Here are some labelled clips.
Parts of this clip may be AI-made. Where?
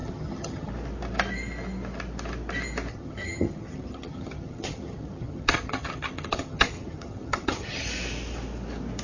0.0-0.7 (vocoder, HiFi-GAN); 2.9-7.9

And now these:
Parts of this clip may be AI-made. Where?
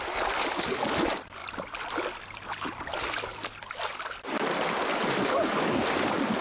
none